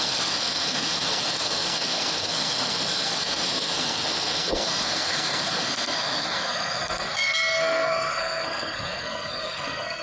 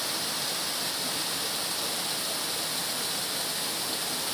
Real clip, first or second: second